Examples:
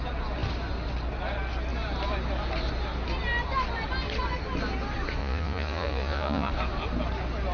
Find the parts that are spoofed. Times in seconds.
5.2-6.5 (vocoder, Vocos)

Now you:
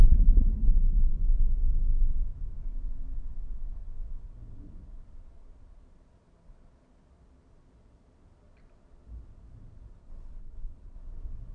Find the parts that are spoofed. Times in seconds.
0.0-1.1 (codec, HILCodec); 10.0-11.0